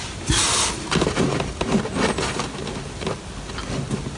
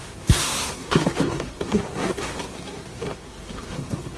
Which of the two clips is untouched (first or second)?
first